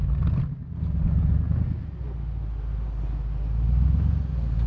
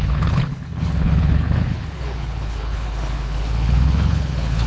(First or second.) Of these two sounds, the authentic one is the first